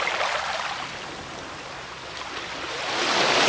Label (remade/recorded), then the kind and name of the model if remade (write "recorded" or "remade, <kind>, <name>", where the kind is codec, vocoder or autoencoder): recorded